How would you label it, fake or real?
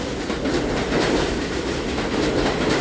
real